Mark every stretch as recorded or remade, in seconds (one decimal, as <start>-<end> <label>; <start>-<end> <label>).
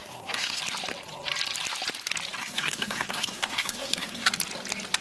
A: 0.0-0.6 remade; 0.6-2.4 recorded; 2.4-4.3 remade; 4.3-5.0 recorded